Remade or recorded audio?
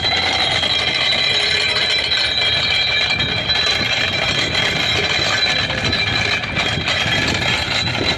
recorded